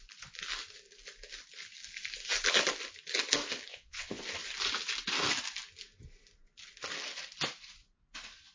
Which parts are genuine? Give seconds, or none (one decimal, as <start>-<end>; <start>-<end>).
0.0-3.7; 4.2-8.5